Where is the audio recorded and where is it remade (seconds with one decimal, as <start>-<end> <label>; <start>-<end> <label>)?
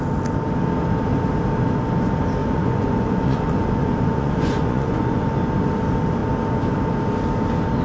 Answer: 0.0-2.4 recorded; 2.4-5.3 remade; 5.3-7.8 recorded